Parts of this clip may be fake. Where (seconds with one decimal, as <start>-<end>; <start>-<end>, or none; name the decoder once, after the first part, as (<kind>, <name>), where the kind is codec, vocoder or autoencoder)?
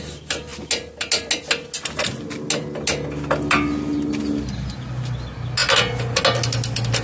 none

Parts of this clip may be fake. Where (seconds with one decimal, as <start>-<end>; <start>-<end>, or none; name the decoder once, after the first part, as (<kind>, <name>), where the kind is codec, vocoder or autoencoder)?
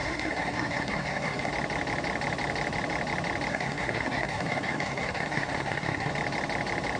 0.0-1.5 (codec, SNAC); 3.5-6.1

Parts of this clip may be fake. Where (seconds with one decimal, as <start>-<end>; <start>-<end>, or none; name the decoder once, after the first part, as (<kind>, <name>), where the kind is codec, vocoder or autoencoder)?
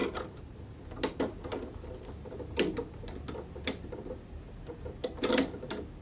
none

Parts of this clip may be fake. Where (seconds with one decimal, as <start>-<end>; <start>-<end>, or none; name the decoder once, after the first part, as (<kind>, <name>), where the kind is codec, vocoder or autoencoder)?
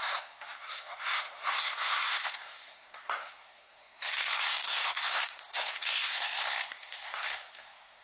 0.0-8.0 (codec, SNAC)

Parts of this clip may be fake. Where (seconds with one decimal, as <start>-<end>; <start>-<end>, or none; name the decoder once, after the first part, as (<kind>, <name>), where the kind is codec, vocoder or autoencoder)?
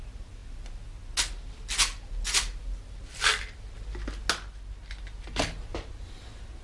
none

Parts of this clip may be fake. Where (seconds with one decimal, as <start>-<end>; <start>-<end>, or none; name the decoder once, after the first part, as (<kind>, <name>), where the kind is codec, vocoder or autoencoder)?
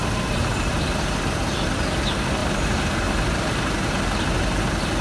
0.0-1.4 (vocoder, BigVGAN v2); 2.4-3.9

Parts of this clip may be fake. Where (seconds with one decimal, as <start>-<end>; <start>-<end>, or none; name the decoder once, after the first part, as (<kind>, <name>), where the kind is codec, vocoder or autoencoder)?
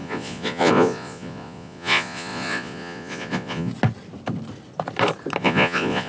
0.0-3.7 (vocoder, Vocos); 5.4-6.1